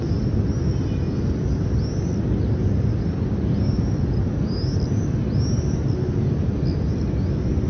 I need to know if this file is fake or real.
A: real